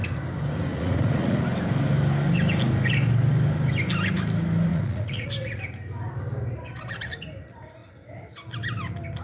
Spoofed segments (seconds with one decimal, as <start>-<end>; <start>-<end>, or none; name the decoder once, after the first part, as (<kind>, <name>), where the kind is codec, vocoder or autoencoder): 0.7-1.4 (vocoder, Vocos); 4.7-5.3